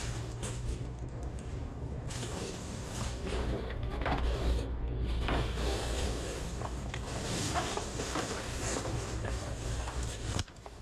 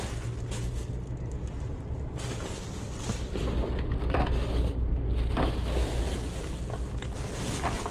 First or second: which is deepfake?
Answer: first